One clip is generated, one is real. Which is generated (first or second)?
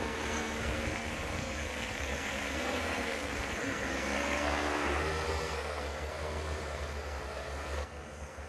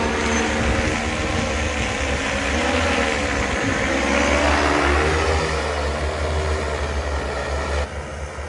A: first